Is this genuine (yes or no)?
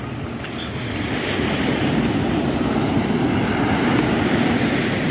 yes